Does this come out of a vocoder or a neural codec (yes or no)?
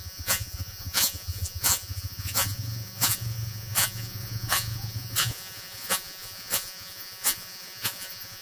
yes